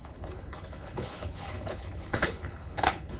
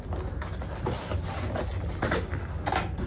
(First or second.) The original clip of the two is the second